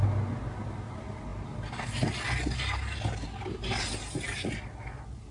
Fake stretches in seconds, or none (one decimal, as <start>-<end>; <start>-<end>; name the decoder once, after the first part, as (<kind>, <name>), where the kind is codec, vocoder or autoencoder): none